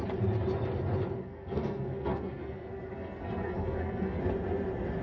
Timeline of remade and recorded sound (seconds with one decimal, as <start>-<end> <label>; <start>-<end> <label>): 0.0-1.2 recorded; 1.2-4.2 remade; 4.2-5.0 recorded